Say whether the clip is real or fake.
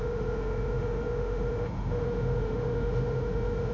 fake